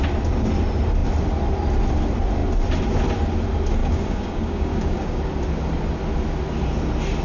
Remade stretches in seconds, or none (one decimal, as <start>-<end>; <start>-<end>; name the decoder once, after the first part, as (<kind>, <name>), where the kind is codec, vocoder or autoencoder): 3.8-5.2 (codec, DAC)